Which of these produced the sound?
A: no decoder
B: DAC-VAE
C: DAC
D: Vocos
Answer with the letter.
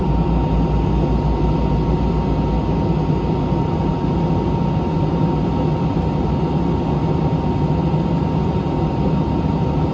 A